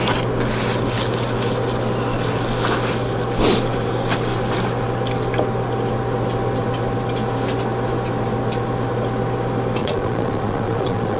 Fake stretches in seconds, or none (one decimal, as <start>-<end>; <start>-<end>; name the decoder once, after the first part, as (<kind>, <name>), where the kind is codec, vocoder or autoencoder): 9.8-11.2 (vocoder, Vocos)